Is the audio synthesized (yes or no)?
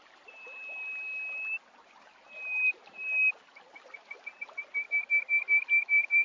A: no